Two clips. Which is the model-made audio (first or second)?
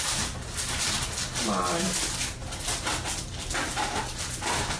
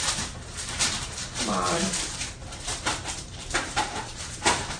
second